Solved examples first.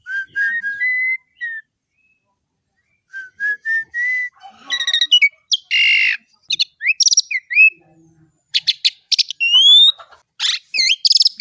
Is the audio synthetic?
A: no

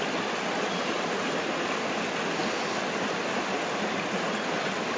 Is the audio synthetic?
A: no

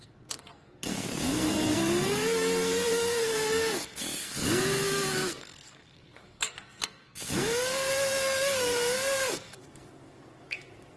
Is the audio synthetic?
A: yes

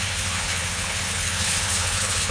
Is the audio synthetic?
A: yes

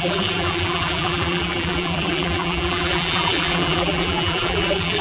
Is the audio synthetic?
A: yes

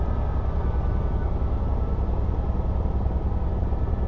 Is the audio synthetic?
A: no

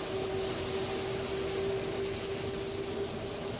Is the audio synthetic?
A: no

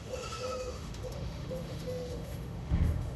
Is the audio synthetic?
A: yes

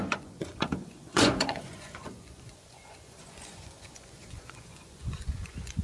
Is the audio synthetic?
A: yes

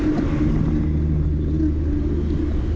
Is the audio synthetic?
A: no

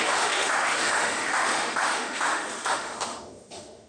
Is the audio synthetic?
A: yes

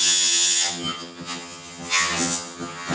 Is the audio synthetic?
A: yes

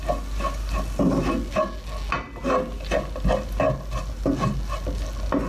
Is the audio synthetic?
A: no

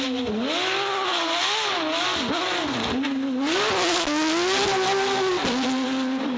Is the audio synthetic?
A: no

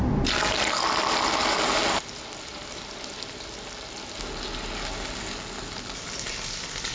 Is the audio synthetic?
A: no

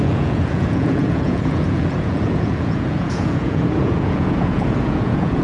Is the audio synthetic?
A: yes